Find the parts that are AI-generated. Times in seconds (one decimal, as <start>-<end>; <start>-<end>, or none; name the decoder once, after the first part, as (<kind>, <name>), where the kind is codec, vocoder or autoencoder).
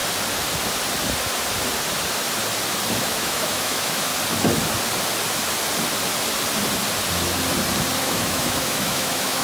3.0-4.1 (autoencoder, DAC-VAE); 8.0-9.4